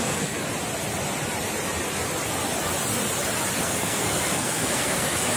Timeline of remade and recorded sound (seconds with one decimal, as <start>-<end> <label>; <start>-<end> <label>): 0.0-0.4 remade; 0.4-3.6 recorded; 3.6-5.4 remade